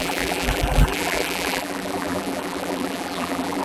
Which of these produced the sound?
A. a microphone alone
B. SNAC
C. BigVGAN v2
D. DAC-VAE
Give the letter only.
C